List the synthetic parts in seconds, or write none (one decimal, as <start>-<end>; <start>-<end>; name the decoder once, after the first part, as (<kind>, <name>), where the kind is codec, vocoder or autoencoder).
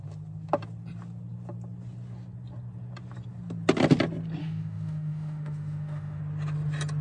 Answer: 4.4-6.2 (autoencoder, DAC-VAE)